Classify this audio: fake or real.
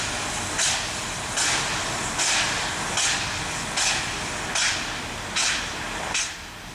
real